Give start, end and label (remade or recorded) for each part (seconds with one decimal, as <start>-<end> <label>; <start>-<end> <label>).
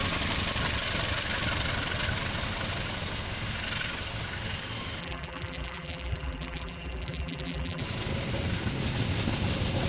0.0-5.0 recorded; 5.0-7.8 remade; 7.8-9.9 recorded